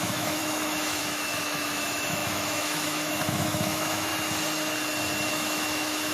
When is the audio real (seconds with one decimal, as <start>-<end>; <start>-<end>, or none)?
4.1-5.3